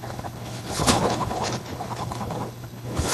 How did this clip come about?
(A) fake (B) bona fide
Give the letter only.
A